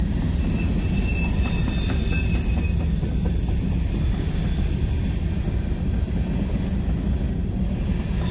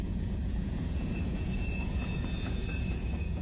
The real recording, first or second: first